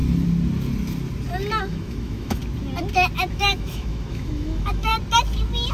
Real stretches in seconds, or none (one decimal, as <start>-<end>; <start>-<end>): 0.0-1.6; 2.4-3.3; 4.9-5.7